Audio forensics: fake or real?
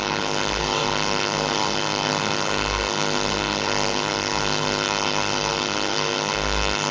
fake